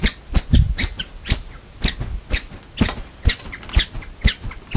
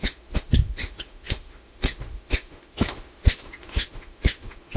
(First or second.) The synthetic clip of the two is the second